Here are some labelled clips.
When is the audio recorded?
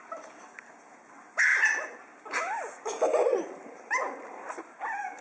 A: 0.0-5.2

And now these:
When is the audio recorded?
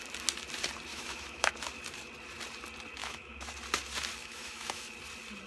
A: 0.0-0.9; 1.5-3.0; 3.5-4.2; 4.9-5.5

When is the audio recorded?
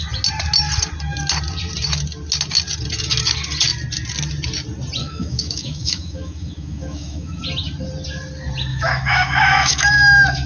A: 0.0-5.0; 7.4-8.7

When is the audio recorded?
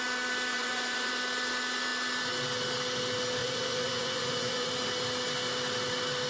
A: 0.0-0.5; 1.1-3.4; 4.7-6.3